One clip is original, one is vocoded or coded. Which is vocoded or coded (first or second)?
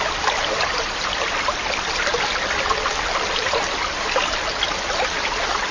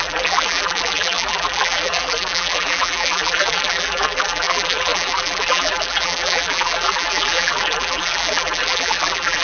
second